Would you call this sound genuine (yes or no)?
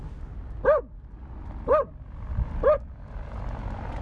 yes